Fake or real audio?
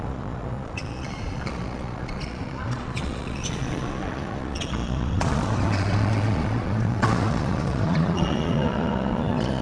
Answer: fake